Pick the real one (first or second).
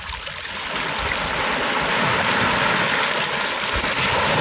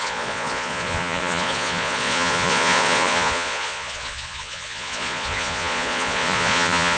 first